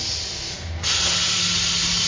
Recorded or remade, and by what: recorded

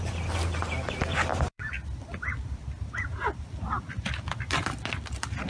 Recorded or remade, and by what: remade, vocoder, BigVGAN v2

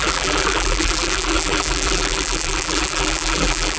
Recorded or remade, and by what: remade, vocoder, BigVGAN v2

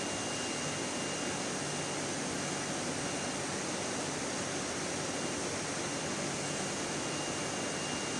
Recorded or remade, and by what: recorded